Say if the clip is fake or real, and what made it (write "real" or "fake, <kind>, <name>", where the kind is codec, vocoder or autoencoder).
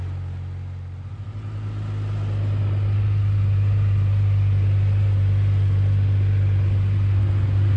real